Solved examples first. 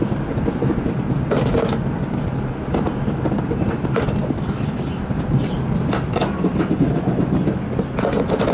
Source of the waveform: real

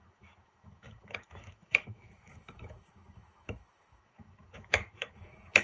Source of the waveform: fake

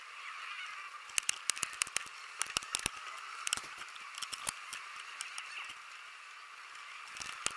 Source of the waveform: real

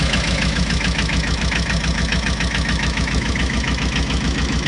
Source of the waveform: fake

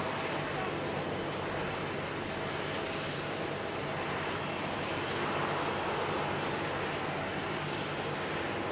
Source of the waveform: real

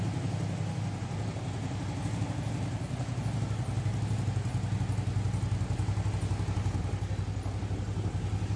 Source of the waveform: real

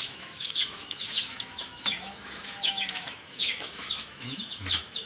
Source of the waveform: fake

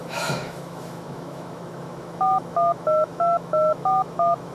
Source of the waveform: fake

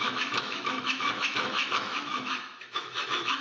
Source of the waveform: fake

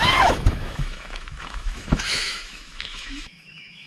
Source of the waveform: fake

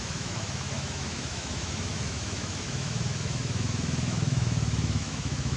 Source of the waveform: fake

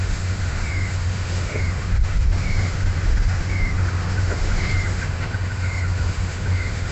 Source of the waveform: fake